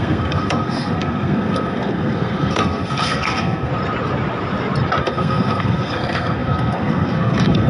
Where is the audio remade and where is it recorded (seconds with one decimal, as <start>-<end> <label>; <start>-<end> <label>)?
0.0-3.7 remade; 3.7-5.0 recorded; 5.0-7.7 remade